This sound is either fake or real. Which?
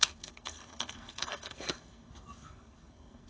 fake